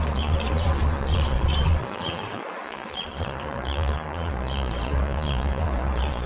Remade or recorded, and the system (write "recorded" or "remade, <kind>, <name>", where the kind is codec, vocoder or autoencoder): remade, vocoder, Vocos